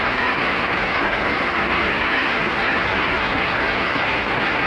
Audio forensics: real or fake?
fake